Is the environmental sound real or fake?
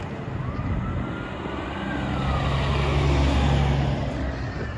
real